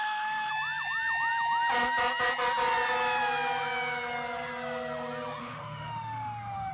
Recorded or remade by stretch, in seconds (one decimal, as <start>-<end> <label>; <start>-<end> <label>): 0.0-0.5 remade; 0.5-5.4 recorded; 5.4-6.7 remade